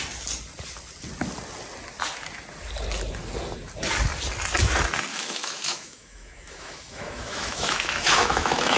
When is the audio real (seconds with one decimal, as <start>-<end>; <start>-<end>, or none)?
0.0-5.1